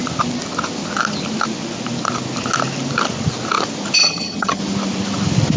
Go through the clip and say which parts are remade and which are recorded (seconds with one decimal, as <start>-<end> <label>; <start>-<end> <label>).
0.0-4.0 recorded; 4.0-4.6 remade; 4.6-5.6 recorded